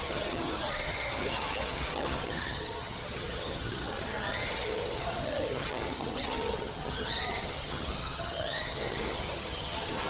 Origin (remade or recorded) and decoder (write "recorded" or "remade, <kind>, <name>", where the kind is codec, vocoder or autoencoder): remade, vocoder, HiFi-GAN